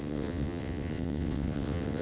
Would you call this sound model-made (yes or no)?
yes